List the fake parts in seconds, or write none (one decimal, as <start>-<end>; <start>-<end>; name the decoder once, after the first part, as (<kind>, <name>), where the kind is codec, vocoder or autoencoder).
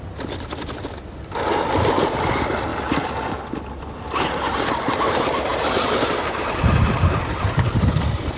none